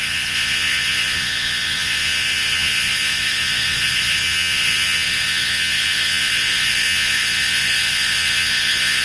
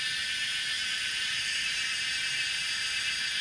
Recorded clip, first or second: second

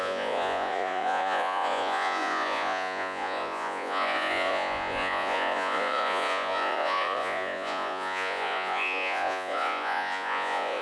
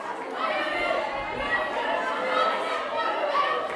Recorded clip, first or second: second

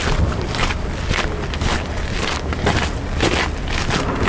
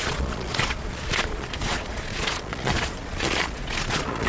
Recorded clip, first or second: first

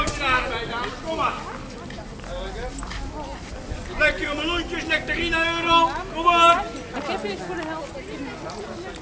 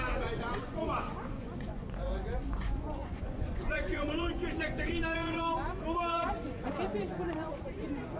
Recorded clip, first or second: first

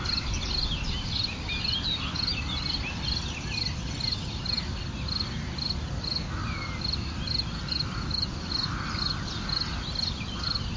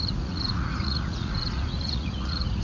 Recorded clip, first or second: first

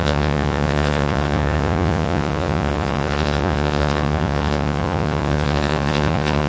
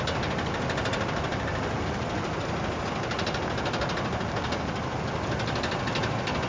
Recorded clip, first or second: second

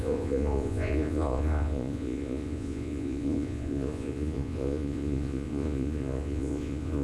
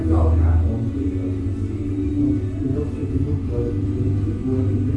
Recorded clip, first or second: second